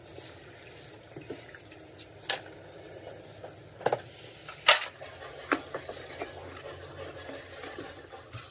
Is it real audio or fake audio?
real